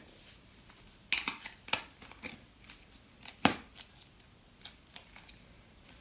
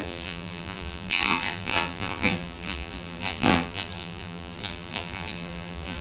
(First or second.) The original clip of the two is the first